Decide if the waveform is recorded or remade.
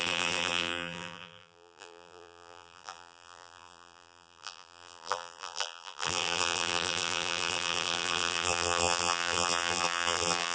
remade